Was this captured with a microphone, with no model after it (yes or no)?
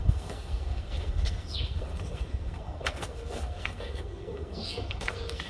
no